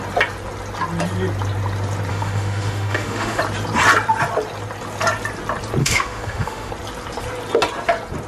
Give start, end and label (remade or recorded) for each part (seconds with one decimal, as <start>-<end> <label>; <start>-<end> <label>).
0.0-2.1 recorded; 2.1-3.4 remade; 3.4-5.8 recorded; 5.8-6.7 remade; 6.7-8.3 recorded